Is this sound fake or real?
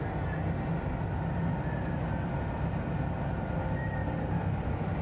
real